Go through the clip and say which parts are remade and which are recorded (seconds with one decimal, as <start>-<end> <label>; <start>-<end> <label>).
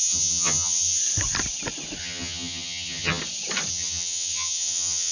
0.0-1.0 remade; 1.0-2.0 recorded; 2.0-3.2 remade; 3.2-3.7 recorded; 3.7-5.1 remade